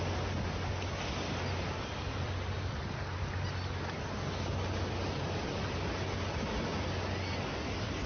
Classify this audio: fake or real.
real